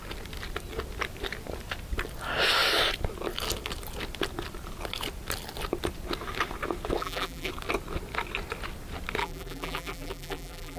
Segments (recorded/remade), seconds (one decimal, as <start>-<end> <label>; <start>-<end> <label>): 0.0-7.0 recorded; 7.0-7.5 remade; 7.5-9.2 recorded; 9.2-10.8 remade